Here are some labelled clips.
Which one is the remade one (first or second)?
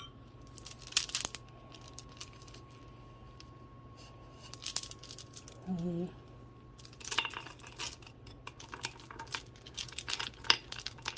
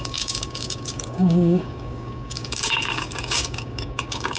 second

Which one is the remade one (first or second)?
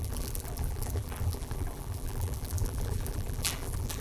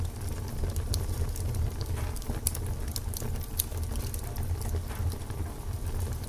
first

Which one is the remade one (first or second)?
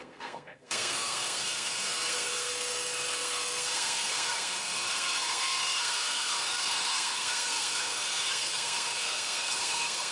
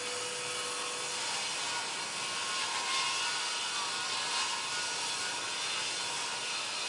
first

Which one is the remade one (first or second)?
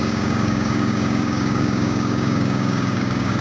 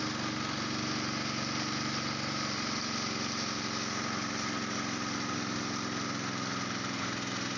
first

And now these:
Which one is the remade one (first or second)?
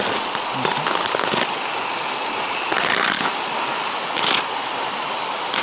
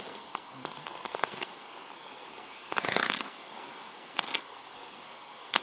second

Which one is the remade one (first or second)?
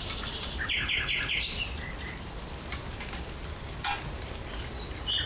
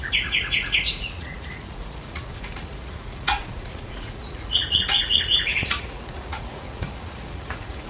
second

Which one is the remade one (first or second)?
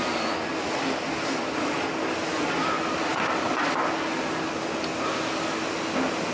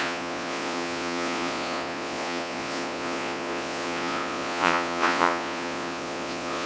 second